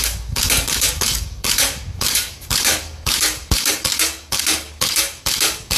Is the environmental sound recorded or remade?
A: remade